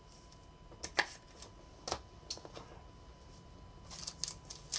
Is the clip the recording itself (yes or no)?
yes